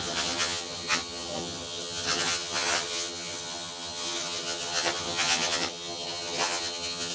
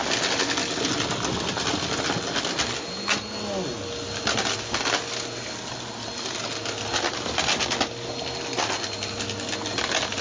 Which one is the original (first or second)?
second